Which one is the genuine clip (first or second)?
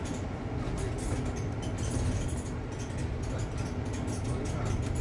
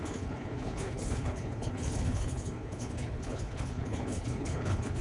first